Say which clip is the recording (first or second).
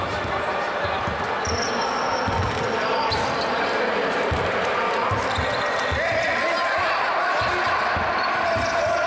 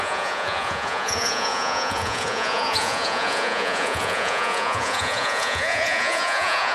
first